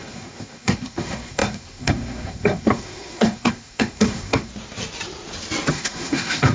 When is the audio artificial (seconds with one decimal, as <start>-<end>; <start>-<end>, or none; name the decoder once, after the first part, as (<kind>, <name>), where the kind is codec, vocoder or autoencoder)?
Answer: 0.0-4.5 (codec, SNAC); 5.7-6.5